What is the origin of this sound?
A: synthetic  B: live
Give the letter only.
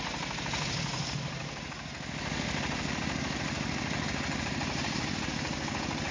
B